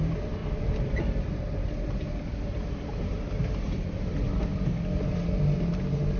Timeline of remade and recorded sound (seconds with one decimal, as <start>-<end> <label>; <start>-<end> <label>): 0.0-0.4 recorded; 0.4-4.1 remade; 4.1-6.2 recorded